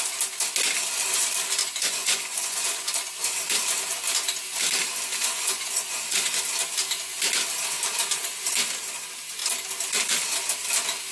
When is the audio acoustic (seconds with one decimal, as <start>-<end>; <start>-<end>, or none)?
0.0-1.6; 3.1-5.2; 6.4-11.1